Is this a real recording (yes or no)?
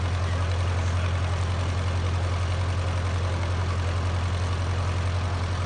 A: yes